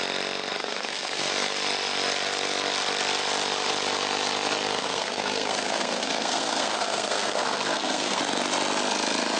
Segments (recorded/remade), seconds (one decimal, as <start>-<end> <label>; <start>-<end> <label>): 0.0-0.6 recorded; 0.6-1.3 remade; 1.3-4.8 recorded; 4.8-8.2 remade; 8.2-9.4 recorded